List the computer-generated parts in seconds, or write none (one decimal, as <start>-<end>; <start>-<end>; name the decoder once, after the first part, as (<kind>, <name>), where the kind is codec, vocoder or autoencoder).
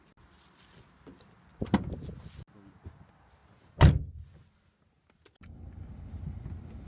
none